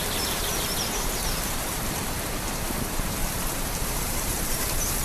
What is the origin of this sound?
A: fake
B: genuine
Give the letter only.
A